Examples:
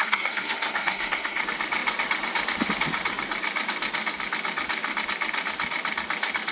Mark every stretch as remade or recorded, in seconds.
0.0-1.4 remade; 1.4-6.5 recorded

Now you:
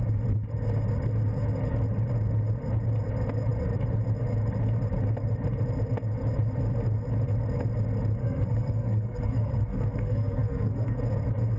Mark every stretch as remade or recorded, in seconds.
0.0-8.2 recorded; 8.2-11.0 remade; 11.0-11.6 recorded

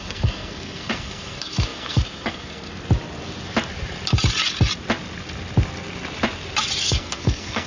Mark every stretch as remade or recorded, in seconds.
0.0-2.7 remade; 2.7-6.8 recorded; 6.8-7.7 remade